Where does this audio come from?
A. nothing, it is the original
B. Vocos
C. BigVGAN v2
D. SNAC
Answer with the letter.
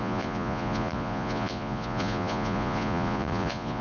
B